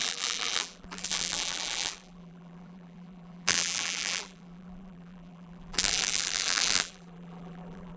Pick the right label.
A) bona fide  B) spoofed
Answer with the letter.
B